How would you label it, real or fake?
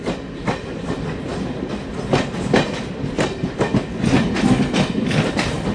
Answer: real